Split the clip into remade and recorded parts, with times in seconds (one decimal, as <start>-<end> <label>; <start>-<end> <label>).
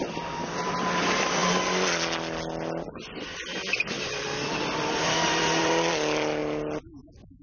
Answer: 0.0-1.4 remade; 1.4-3.0 recorded; 3.0-6.4 remade; 6.4-7.4 recorded